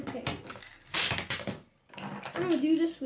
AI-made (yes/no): no